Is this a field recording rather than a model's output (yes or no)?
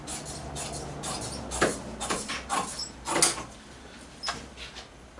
yes